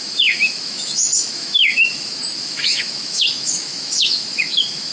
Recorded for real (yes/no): no